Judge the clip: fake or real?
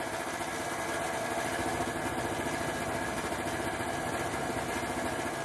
real